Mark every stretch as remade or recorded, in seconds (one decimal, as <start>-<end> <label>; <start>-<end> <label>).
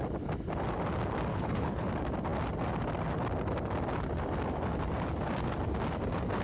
0.0-1.3 recorded; 1.3-1.9 remade; 1.9-6.4 recorded